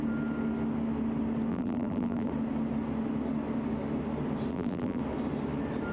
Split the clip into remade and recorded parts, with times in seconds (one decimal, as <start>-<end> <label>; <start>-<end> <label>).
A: 0.0-1.5 recorded; 1.5-2.3 remade; 2.3-4.5 recorded; 4.5-5.0 remade; 5.0-5.9 recorded